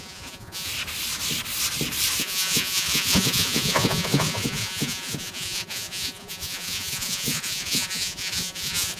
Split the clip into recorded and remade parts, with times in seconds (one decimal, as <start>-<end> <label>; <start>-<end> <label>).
0.0-0.7 remade; 0.7-2.2 recorded; 2.2-9.0 remade